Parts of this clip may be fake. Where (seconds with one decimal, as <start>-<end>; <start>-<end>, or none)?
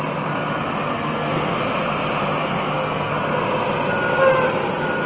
0.9-1.6; 2.4-3.1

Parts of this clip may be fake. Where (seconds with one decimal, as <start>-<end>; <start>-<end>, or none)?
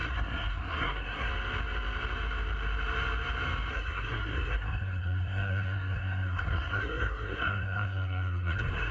0.0-1.3; 3.7-8.9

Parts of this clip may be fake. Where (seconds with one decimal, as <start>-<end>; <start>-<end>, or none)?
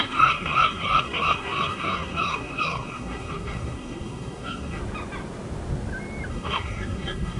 0.0-4.8; 6.3-7.4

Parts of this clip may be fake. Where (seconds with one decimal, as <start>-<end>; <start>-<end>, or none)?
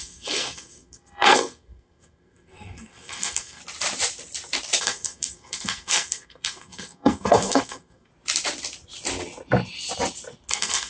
0.0-3.6; 4.8-8.1; 10.5-10.9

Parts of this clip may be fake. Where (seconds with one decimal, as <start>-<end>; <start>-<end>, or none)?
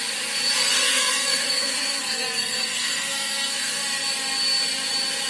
0.6-3.8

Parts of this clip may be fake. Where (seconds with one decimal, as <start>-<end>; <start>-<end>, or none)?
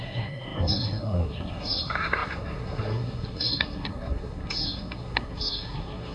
0.0-6.1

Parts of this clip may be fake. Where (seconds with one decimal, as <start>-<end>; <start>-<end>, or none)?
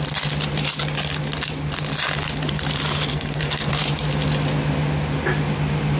3.1-3.7